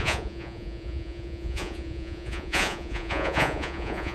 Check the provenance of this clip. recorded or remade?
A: remade